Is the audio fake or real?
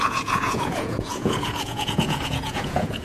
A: fake